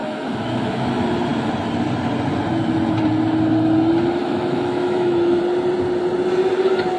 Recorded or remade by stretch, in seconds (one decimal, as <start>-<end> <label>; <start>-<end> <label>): 0.0-0.9 remade; 0.9-4.2 recorded; 4.2-5.4 remade; 5.4-7.0 recorded